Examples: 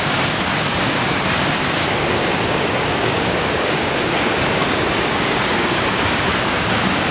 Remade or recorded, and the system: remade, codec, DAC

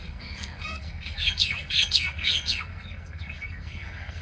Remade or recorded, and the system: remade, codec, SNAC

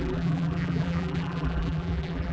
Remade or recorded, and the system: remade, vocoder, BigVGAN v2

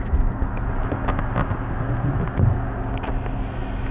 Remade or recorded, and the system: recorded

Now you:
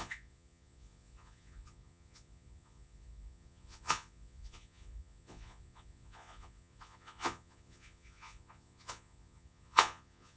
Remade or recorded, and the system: remade, vocoder, Vocos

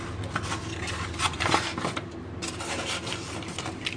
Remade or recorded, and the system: recorded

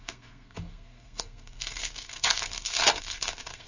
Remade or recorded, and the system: remade, codec, SNAC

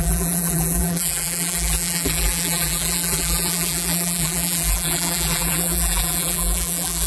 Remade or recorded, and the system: remade, vocoder, BigVGAN v2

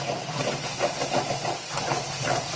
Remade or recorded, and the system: recorded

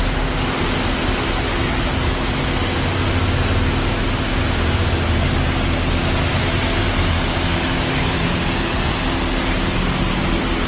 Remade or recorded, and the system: recorded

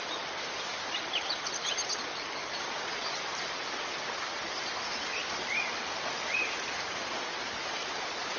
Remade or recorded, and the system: recorded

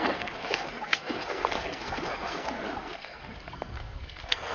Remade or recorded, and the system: remade, codec, SNAC